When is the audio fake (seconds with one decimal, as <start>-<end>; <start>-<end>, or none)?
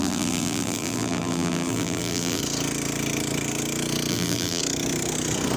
0.0-2.4; 4.1-4.6